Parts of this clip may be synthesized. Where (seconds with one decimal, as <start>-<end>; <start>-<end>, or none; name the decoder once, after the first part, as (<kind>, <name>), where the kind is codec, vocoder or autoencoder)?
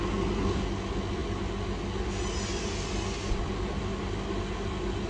none